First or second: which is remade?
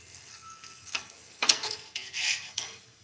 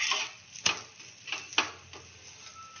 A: first